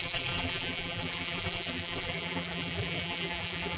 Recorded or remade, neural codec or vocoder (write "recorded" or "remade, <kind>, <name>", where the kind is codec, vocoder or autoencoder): remade, vocoder, BigVGAN v2